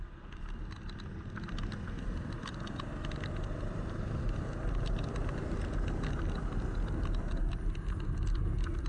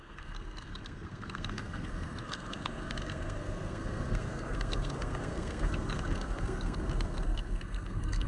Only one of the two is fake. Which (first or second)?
second